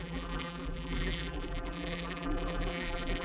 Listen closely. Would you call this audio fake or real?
fake